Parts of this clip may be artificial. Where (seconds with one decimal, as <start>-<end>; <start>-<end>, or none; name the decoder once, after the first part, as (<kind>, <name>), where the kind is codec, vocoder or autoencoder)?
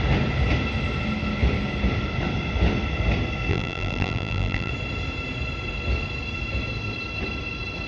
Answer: 3.5-4.7 (vocoder, BigVGAN v2)